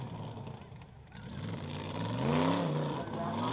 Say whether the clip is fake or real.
real